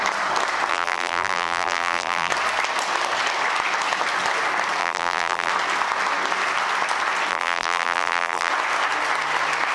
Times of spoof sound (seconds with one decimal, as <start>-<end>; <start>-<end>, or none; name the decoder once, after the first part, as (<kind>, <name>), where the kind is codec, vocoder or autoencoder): 0.7-2.3 (vocoder, BigVGAN v2); 4.8-5.5; 7.3-8.5